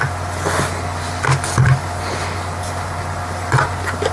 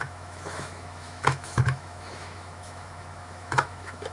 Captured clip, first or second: first